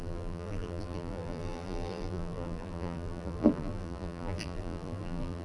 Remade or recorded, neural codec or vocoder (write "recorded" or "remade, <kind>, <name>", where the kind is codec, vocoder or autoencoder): remade, vocoder, BigVGAN v2